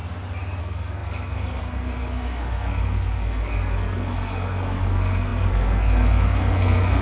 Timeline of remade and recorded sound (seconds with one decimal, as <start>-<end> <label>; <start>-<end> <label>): 0.0-0.6 recorded; 0.6-7.0 remade